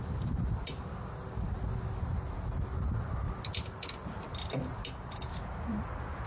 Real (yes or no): yes